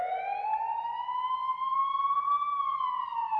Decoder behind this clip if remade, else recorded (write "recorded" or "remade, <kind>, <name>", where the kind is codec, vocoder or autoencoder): recorded